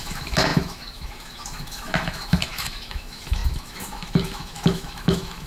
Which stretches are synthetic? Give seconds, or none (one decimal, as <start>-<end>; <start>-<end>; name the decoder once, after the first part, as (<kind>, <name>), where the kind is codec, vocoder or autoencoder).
0.0-5.5 (autoencoder, DAC-VAE)